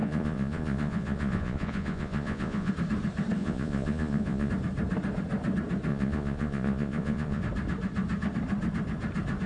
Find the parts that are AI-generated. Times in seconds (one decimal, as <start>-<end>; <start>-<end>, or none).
0.0-2.7; 3.4-4.5; 5.9-7.4